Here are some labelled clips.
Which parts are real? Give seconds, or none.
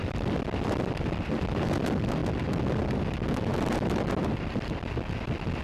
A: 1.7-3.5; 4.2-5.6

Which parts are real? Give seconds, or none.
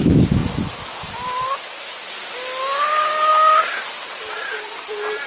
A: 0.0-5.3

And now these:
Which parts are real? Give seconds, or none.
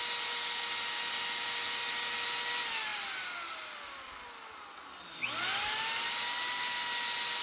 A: 0.0-7.4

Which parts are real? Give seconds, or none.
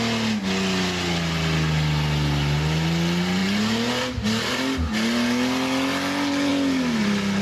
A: 0.0-7.4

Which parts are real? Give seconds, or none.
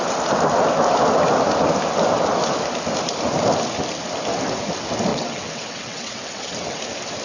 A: 0.0-5.1; 6.8-7.2